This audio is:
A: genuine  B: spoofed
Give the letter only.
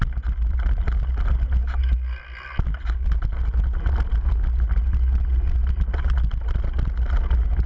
A